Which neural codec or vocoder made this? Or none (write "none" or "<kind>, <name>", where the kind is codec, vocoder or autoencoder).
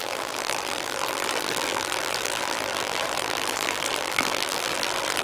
vocoder, BigVGAN v2